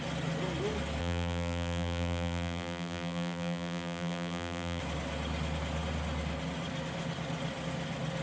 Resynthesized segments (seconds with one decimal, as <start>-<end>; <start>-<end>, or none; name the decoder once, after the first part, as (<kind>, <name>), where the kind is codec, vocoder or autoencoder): 1.0-4.8 (vocoder, BigVGAN v2)